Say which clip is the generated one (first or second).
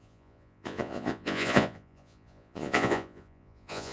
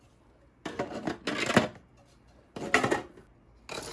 first